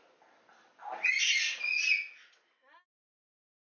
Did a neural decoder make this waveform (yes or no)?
no